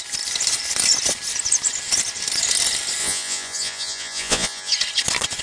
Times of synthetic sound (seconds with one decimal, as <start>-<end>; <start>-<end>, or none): 3.0-4.7